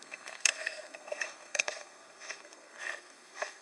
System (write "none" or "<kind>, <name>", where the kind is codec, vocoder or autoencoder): codec, SNAC